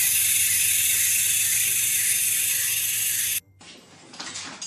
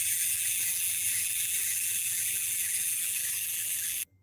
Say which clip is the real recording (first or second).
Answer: first